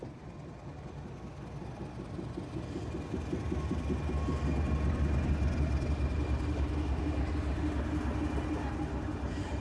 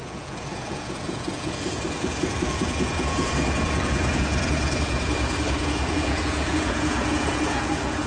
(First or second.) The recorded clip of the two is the first